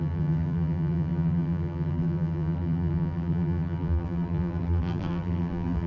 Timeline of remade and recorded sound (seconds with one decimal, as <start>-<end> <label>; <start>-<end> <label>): 0.0-5.9 remade